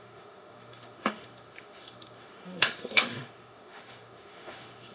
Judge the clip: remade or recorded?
remade